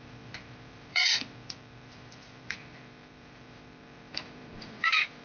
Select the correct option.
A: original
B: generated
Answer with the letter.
B